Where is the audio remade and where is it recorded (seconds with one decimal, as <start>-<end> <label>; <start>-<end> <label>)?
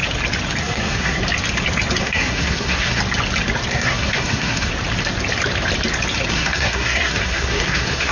0.0-0.6 recorded; 0.6-1.2 remade; 1.2-2.0 recorded; 2.0-3.0 remade; 3.0-3.7 recorded; 3.7-4.7 remade; 4.7-6.3 recorded; 6.3-8.1 remade